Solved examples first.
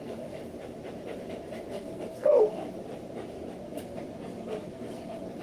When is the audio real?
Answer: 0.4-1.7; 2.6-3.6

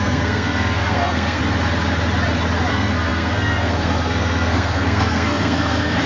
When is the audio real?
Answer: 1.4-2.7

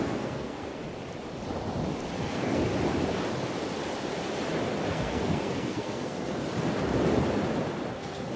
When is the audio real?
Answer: 0.8-2.2; 2.6-4.9; 6.4-7.9

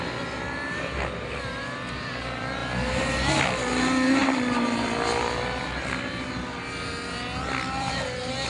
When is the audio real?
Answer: 0.0-8.5

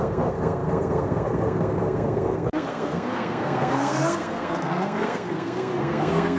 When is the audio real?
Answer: none

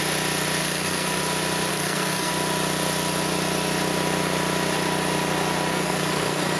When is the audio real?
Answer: 0.0-0.6; 1.2-1.7; 2.3-5.7

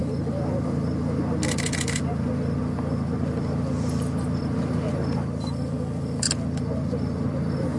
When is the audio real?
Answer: 0.0-7.8